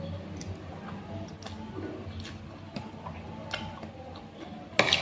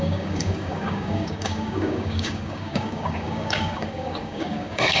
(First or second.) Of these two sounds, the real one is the first